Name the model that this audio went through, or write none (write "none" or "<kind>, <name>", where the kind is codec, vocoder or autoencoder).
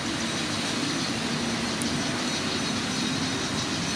none